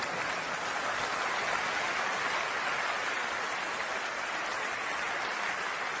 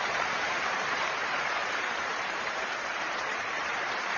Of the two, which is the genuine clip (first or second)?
first